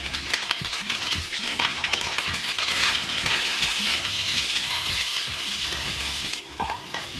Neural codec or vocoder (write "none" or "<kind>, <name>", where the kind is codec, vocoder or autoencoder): codec, SNAC